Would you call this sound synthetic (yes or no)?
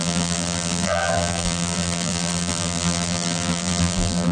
yes